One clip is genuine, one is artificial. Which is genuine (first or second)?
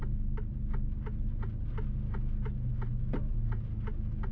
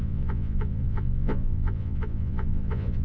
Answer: first